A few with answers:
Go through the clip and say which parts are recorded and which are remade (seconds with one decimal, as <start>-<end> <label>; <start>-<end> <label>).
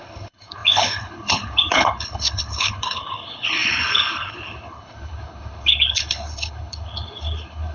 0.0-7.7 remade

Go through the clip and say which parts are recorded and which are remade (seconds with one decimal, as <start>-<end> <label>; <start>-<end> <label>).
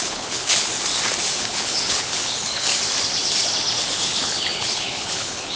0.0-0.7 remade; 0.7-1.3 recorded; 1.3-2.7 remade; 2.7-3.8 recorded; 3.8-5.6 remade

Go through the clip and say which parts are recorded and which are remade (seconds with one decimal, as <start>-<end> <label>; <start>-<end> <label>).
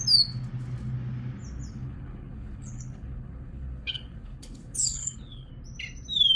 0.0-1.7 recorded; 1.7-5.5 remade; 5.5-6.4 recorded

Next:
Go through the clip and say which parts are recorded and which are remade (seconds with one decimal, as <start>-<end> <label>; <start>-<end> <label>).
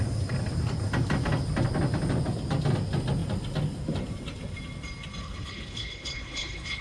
0.0-5.2 recorded; 5.2-6.8 remade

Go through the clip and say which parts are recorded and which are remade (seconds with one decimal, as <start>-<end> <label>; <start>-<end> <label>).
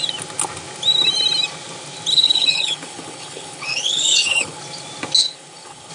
0.0-2.1 recorded; 2.1-4.6 remade; 4.6-5.2 recorded; 5.2-5.9 remade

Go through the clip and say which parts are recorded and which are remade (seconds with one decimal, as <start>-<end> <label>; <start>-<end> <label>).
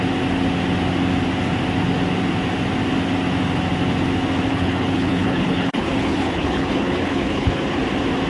0.0-4.5 recorded; 4.5-7.8 remade; 7.8-8.3 recorded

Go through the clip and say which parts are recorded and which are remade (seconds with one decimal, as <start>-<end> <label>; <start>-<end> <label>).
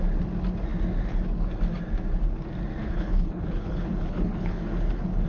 0.0-2.8 recorded; 2.8-4.6 remade; 4.6-5.3 recorded